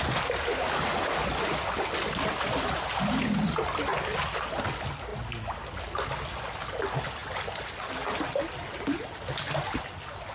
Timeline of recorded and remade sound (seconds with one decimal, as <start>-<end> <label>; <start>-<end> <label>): 0.0-10.3 recorded